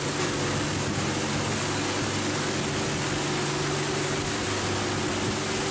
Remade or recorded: recorded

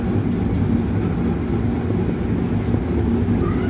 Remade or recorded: recorded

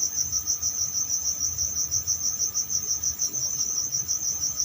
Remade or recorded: recorded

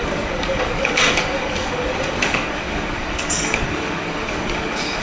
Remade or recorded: remade